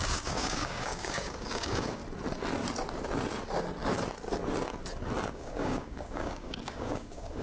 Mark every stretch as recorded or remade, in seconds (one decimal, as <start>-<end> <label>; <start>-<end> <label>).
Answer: 0.0-2.0 remade; 2.0-5.3 recorded; 5.3-7.4 remade